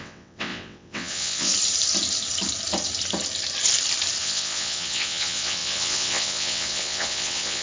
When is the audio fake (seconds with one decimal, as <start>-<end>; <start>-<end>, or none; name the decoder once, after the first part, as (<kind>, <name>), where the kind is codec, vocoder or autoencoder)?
0.0-1.5 (vocoder, WaveNeXt); 4.2-7.6